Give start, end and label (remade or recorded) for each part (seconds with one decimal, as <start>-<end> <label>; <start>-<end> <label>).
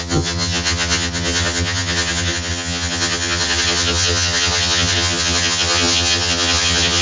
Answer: 0.0-7.0 remade